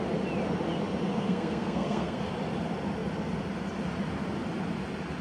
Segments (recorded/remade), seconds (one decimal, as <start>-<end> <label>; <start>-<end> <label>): 0.0-1.1 recorded; 1.1-2.2 remade; 2.2-5.2 recorded